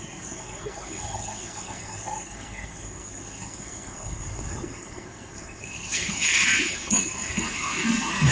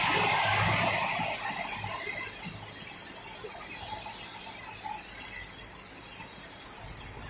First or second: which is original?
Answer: second